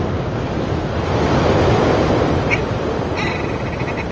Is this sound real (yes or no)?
yes